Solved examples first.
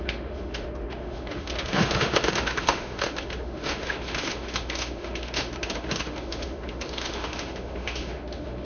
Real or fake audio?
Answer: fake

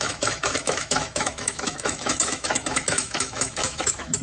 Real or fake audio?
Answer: fake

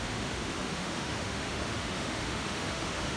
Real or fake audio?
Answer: fake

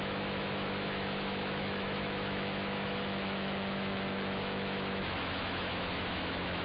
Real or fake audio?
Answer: fake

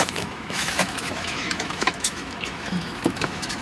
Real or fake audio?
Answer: fake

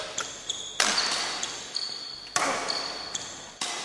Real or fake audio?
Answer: real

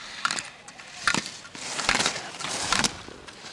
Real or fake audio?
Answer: real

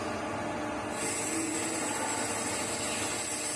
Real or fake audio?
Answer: real